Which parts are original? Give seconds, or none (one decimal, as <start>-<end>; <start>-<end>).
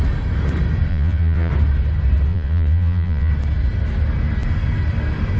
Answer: 0.0-0.9; 1.5-2.3; 3.3-5.4